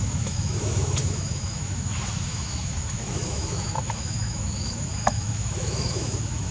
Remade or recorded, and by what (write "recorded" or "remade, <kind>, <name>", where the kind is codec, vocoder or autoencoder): remade, autoencoder, DAC-VAE